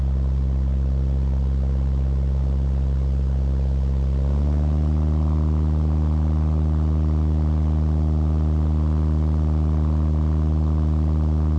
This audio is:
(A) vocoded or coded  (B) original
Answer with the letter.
B